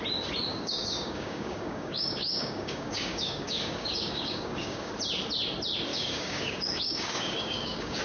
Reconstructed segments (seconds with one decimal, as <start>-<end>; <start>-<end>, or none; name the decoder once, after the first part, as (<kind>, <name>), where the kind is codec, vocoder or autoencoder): 0.5-4.9 (codec, DAC); 5.9-8.0